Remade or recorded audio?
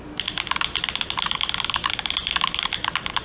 recorded